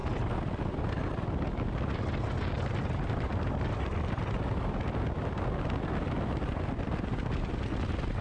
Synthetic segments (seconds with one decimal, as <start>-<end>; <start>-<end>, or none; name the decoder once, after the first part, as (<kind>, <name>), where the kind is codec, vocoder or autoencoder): none